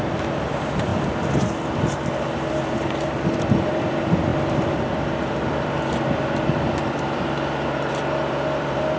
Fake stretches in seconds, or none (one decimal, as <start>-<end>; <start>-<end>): 0.0-0.9; 1.8-9.0